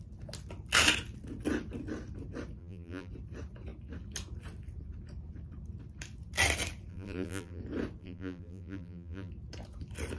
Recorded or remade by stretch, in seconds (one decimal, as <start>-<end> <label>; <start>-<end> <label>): 0.0-2.6 recorded; 2.6-3.1 remade; 3.1-6.9 recorded; 6.9-7.6 remade; 7.6-8.0 recorded; 8.0-9.3 remade; 9.3-10.2 recorded